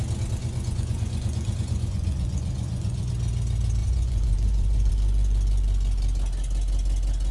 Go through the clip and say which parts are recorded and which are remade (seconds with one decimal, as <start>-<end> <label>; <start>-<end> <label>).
0.0-0.4 recorded; 0.4-3.1 remade; 3.1-3.8 recorded; 3.8-4.9 remade; 4.9-7.3 recorded